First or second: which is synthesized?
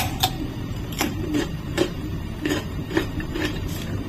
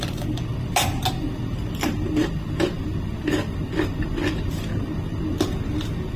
first